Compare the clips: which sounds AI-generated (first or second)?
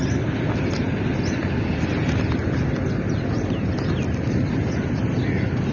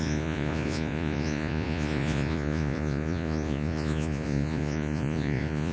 second